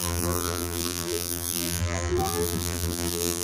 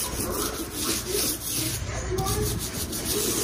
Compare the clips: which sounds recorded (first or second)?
second